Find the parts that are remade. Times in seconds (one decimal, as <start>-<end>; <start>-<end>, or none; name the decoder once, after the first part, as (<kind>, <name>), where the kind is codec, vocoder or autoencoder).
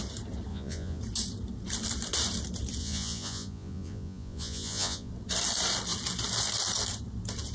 0.5-1.0 (vocoder, Vocos); 2.8-5.1